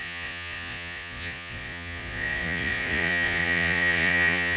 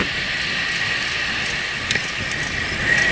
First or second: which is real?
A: second